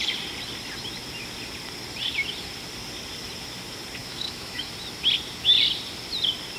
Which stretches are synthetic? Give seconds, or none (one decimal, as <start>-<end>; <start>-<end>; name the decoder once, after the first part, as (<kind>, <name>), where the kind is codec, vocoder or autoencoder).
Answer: 4.0-4.7 (autoencoder, DAC-VAE)